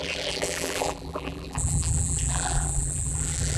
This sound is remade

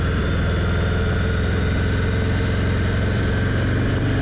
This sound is recorded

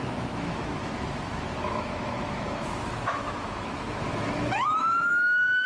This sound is remade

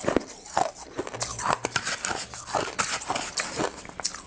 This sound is recorded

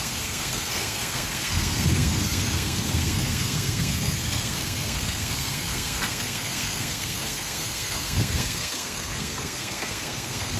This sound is remade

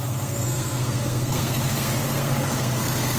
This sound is remade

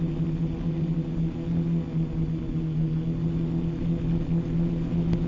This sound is recorded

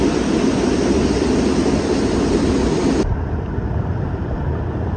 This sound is recorded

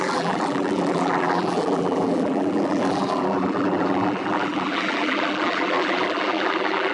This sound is remade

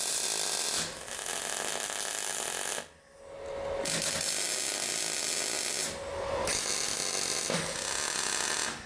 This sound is recorded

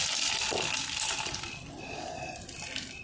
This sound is recorded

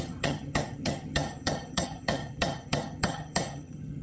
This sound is remade